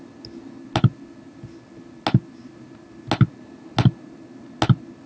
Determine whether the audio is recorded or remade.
recorded